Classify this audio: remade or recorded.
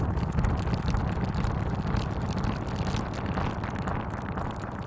recorded